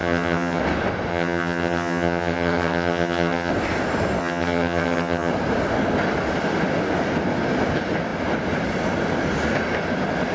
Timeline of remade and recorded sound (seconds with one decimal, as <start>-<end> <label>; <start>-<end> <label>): 0.0-0.6 remade; 0.6-1.1 recorded; 1.1-3.5 remade; 3.5-4.2 recorded; 4.2-5.3 remade; 5.3-10.3 recorded